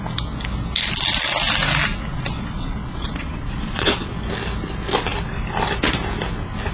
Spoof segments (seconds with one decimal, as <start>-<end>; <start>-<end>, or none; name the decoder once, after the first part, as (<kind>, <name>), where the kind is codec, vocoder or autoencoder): 2.1-4.1 (vocoder, Vocos)